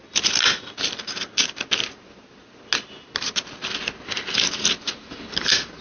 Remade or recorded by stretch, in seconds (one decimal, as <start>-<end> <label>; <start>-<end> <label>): 0.0-5.8 recorded